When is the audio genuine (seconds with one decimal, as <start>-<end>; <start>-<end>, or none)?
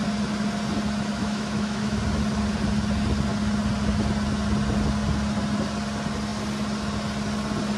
0.0-1.2; 2.0-7.8